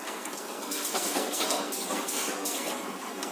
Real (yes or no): no